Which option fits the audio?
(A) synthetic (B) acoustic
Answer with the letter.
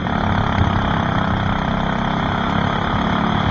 B